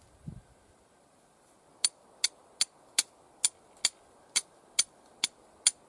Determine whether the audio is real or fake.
real